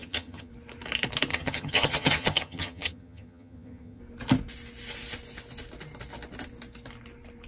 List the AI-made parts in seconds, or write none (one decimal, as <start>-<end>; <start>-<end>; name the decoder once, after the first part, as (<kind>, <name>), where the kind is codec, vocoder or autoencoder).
0.0-0.5 (vocoder, HiFi-GAN); 1.3-4.0